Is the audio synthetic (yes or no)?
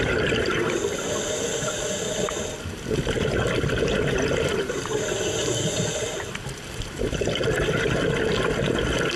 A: yes